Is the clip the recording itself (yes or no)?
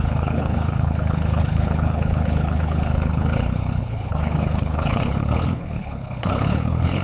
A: no